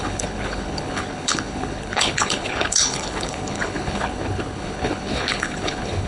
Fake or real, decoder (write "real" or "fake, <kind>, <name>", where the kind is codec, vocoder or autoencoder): fake, codec, HILCodec